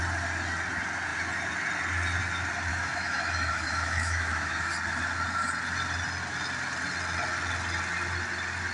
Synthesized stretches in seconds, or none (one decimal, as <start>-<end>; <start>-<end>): 2.7-4.7